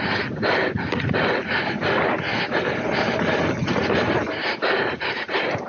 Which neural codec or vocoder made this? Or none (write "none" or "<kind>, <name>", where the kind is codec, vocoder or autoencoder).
none